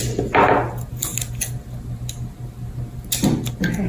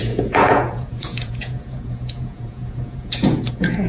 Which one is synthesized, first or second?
second